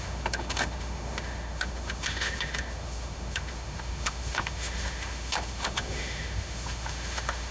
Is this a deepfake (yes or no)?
yes